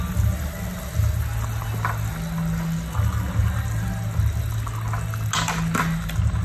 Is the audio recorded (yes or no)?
yes